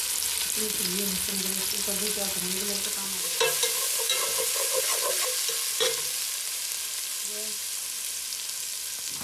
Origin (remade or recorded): recorded